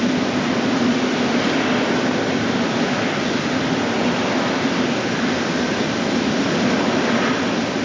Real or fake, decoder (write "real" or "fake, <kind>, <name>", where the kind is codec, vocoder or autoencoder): real